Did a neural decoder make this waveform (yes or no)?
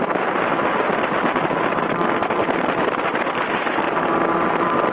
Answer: yes